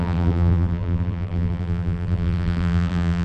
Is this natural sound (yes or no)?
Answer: no